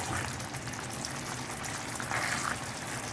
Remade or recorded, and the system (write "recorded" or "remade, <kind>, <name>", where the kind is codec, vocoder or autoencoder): recorded